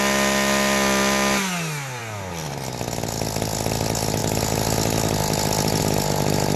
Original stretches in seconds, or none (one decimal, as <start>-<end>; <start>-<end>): 0.0-6.6